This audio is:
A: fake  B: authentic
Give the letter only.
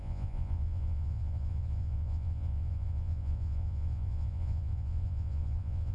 A